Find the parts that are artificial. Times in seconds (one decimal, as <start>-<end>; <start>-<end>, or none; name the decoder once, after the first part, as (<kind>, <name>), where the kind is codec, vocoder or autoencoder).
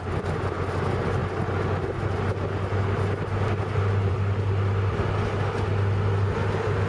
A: none